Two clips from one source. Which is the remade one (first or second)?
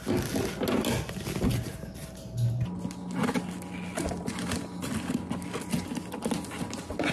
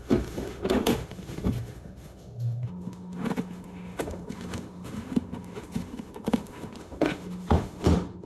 second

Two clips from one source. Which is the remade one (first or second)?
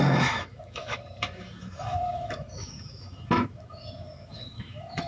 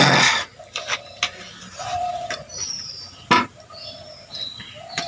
first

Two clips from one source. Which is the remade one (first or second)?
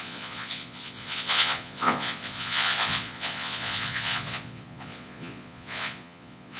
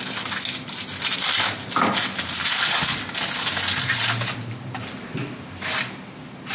first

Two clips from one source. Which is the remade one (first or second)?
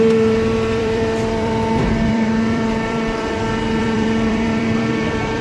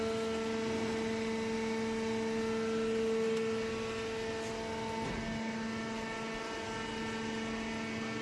first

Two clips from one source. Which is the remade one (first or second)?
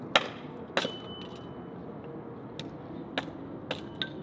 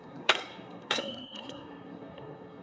second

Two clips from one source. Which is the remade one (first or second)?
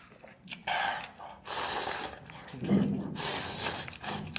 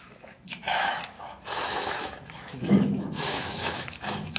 second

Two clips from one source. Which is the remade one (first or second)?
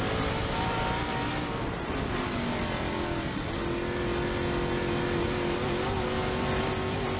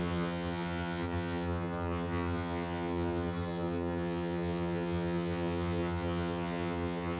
second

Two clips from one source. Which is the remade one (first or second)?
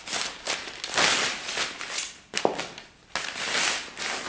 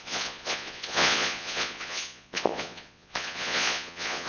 second